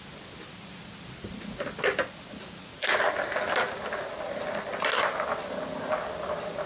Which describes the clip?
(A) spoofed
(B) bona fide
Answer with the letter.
B